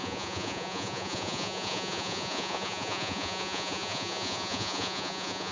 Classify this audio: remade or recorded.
remade